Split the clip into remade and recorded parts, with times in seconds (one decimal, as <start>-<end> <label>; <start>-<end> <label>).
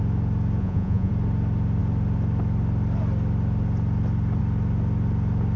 0.0-0.6 recorded; 0.6-1.1 remade; 1.1-5.6 recorded